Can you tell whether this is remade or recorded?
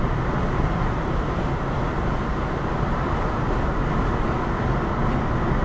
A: recorded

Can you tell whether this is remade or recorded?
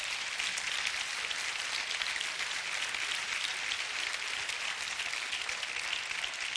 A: recorded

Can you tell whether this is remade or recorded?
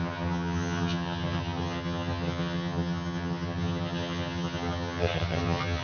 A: remade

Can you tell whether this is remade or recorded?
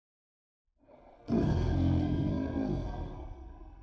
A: remade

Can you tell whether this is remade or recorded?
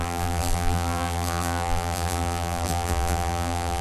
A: remade